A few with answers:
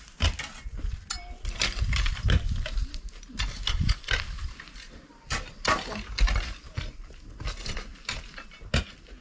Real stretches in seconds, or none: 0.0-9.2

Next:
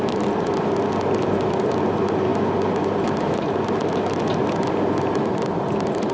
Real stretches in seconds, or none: 0.0-6.1

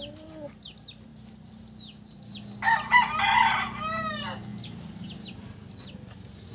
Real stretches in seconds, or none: 0.0-6.5

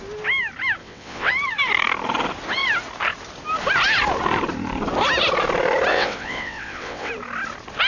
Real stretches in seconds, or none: 0.0-0.8; 1.3-5.9; 7.1-7.9

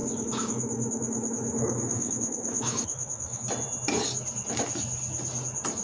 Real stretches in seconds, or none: 3.5-5.8

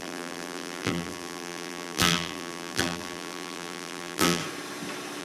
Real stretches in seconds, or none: 4.4-5.2